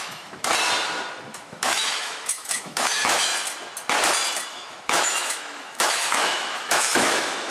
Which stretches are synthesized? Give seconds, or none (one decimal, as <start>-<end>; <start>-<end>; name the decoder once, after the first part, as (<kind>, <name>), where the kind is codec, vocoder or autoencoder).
0.0-0.5 (autoencoder, DAC-VAE); 1.3-3.3; 4.5-7.5